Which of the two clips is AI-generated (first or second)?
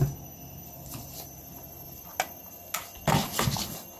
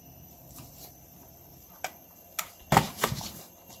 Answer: second